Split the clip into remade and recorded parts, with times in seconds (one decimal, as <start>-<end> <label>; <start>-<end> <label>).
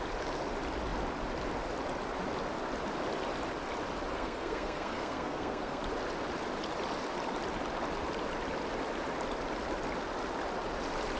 0.0-4.1 recorded; 4.1-5.8 remade; 5.8-11.2 recorded